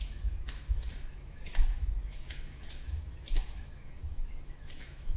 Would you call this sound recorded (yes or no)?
no